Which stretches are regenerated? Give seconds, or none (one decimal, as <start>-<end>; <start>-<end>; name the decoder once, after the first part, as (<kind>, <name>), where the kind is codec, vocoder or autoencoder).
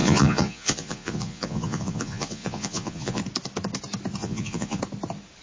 0.0-3.2 (vocoder, Vocos); 4.2-4.8